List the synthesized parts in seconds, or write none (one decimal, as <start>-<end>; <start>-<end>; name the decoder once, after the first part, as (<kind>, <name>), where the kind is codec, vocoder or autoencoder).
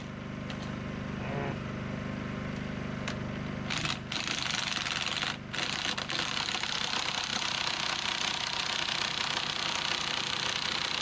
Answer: none